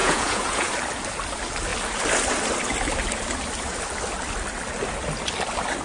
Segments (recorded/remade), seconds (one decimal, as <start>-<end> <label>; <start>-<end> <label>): 0.0-0.7 remade; 0.7-5.8 recorded